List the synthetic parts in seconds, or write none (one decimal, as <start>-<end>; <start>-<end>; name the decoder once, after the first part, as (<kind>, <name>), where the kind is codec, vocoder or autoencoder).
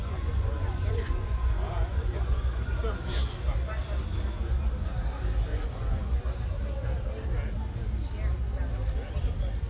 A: 0.0-2.8 (vocoder, Vocos); 5.5-6.2